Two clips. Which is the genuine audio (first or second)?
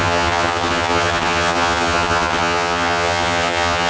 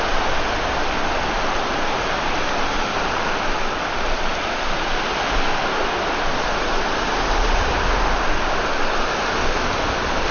second